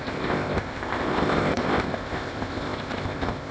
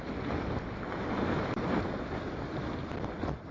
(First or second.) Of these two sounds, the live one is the second